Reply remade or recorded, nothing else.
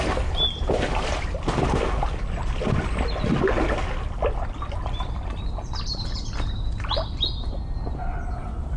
recorded